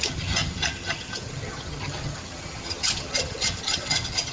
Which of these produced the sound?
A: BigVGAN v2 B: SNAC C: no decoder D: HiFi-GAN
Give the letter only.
D